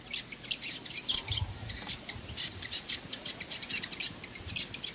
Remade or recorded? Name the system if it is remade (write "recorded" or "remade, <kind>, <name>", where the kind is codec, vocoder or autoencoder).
recorded